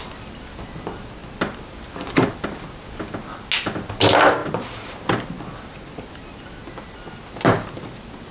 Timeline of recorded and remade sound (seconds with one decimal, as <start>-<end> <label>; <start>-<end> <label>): 0.0-8.3 recorded